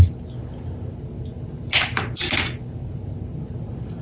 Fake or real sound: real